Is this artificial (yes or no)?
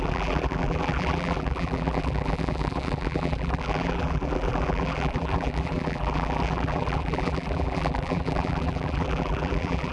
yes